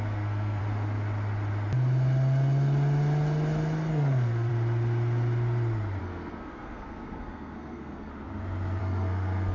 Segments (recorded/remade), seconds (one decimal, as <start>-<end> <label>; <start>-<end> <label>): 0.0-0.6 remade; 0.6-3.9 recorded; 3.9-4.5 remade; 4.5-6.0 recorded; 6.0-8.1 remade; 8.1-8.8 recorded; 8.8-9.5 remade